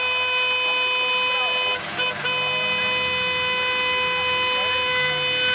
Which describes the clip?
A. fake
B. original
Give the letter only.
B